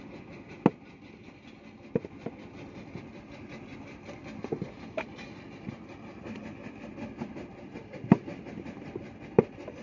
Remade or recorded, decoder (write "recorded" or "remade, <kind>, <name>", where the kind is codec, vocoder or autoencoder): recorded